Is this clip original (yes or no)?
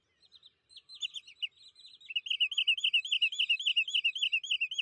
yes